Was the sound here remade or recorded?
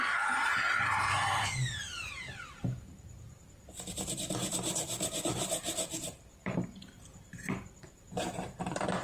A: remade